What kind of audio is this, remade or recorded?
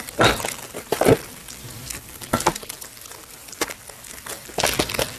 recorded